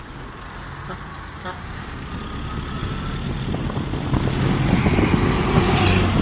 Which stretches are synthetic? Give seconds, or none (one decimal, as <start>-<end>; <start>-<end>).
1.1-2.1